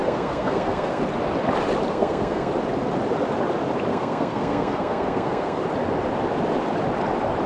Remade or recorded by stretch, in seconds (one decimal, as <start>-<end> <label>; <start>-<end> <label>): 0.0-1.0 remade; 1.0-1.9 recorded; 1.9-2.5 remade; 2.5-3.9 recorded; 3.9-5.6 remade; 5.6-7.5 recorded